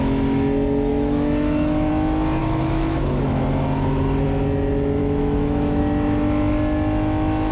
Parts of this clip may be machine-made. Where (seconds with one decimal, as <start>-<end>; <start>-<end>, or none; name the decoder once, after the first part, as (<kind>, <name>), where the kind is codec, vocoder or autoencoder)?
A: 0.9-1.9 (autoencoder, DAC-VAE); 2.4-3.4; 5.0-5.8